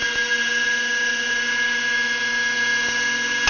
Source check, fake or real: real